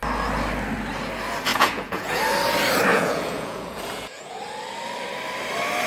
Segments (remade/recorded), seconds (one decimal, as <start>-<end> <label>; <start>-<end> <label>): 0.0-1.5 recorded; 1.5-2.2 remade; 2.2-2.9 recorded; 2.9-4.4 remade; 4.4-5.9 recorded